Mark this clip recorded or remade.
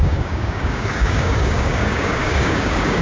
remade